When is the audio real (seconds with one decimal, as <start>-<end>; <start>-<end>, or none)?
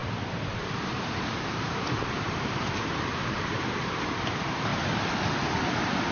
4.7-5.6